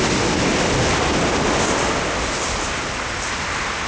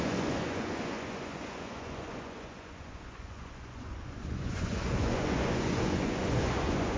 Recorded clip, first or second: first